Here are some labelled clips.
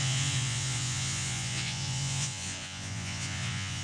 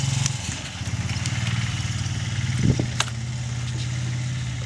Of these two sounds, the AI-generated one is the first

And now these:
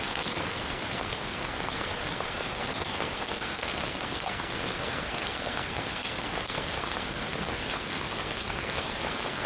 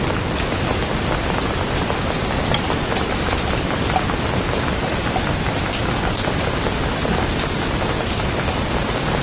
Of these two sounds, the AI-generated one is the first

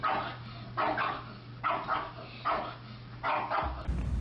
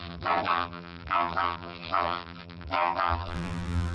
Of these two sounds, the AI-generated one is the second